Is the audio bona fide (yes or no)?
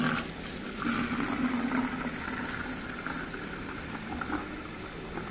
yes